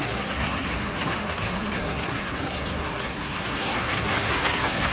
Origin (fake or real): fake